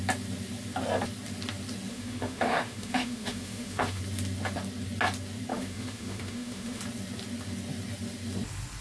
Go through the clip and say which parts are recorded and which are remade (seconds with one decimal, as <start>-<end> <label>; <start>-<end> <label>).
0.0-1.9 recorded; 1.9-4.0 remade; 4.0-5.5 recorded; 5.5-6.8 remade; 6.8-8.8 recorded